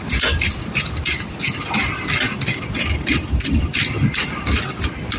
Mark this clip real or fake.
real